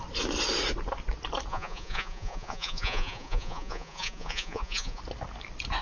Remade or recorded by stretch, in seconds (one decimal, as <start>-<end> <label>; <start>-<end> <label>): 0.0-1.5 recorded; 1.5-5.0 remade; 5.0-5.8 recorded

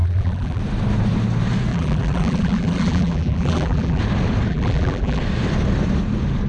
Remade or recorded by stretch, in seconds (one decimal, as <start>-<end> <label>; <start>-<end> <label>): 0.0-0.6 remade; 0.6-1.7 recorded; 1.7-4.0 remade; 4.0-4.5 recorded; 4.5-5.2 remade; 5.2-6.5 recorded